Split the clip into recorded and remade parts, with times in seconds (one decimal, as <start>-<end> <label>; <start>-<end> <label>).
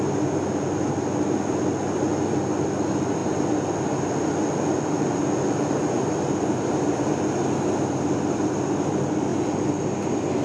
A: 0.0-10.4 recorded